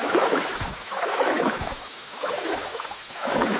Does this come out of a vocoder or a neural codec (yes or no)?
yes